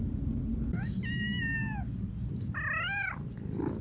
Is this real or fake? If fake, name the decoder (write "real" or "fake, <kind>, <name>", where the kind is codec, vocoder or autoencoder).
real